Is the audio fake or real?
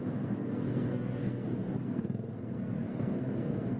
fake